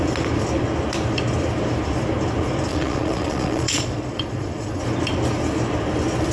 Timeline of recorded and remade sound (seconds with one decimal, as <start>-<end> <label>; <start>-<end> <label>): 0.0-2.7 recorded; 2.7-4.8 remade; 4.8-6.3 recorded